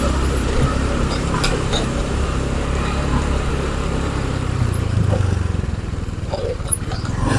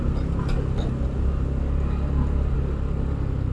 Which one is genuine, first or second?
second